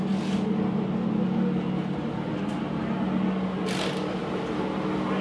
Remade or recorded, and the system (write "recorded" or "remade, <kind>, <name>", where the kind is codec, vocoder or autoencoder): recorded